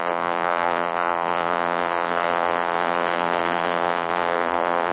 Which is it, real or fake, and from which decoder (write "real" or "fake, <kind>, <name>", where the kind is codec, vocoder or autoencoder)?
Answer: fake, vocoder, BigVGAN v2